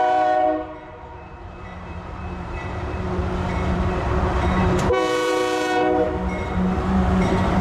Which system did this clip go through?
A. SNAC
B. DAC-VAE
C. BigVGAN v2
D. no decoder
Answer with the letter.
C